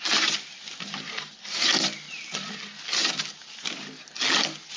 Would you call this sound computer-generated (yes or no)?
no